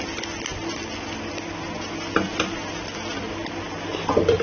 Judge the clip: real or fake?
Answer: real